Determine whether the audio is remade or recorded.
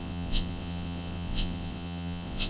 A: remade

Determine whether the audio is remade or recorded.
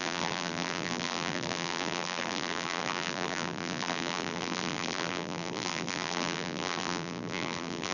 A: remade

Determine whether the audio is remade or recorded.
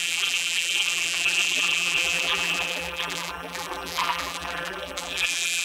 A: remade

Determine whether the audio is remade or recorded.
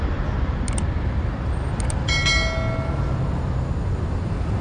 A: recorded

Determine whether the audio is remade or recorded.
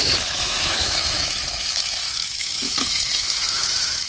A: remade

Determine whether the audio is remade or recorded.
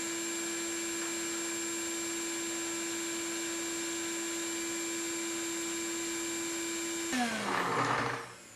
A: recorded